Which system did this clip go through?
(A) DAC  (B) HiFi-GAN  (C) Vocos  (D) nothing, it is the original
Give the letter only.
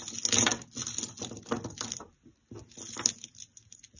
D